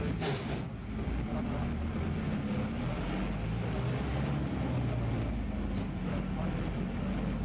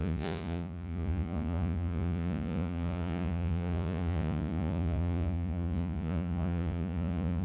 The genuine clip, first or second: first